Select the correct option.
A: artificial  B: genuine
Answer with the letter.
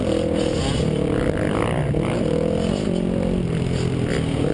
B